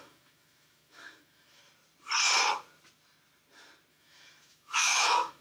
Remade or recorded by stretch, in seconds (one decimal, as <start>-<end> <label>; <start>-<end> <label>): 0.0-1.6 remade; 1.6-3.9 recorded; 3.9-5.4 remade